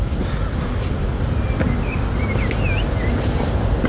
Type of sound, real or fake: real